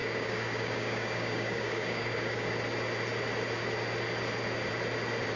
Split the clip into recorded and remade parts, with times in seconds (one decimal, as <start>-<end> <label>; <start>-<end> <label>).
0.0-2.5 remade; 2.5-5.4 recorded